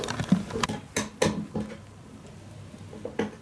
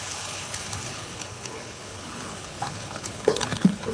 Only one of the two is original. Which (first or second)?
first